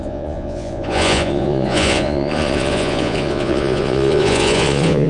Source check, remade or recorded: remade